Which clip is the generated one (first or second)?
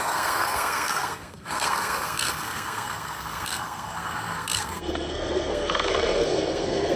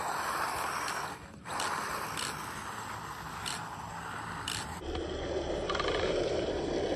first